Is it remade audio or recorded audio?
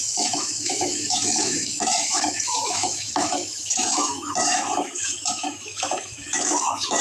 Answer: remade